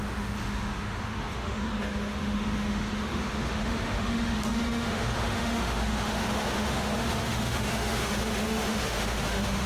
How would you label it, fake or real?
fake